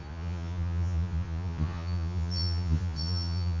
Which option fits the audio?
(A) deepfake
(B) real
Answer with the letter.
A